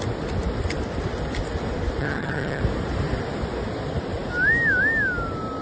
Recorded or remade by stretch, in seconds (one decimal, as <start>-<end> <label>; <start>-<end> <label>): 0.0-2.0 recorded; 2.0-2.6 remade; 2.6-5.6 recorded